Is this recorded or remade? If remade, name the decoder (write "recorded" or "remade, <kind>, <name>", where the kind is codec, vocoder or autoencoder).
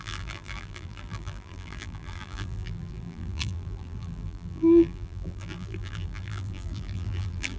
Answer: remade, vocoder, BigVGAN v2